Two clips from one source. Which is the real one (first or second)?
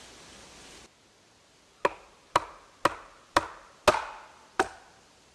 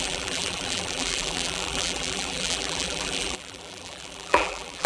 first